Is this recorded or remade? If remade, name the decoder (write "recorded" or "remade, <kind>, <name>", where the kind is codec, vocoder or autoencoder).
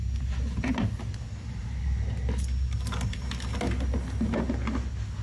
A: recorded